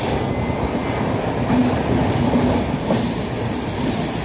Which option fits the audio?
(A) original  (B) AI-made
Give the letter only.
A